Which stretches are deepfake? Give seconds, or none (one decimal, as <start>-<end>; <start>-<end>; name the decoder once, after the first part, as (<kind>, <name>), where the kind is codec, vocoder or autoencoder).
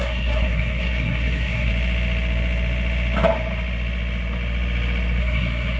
0.0-1.7 (codec, SNAC); 5.2-5.8